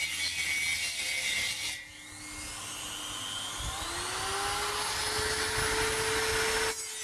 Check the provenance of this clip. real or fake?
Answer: real